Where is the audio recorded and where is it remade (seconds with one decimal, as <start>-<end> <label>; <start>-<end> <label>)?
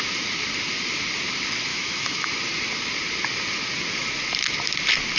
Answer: 0.0-1.7 recorded; 1.7-2.3 remade; 2.3-5.2 recorded